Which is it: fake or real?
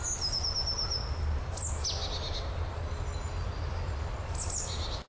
real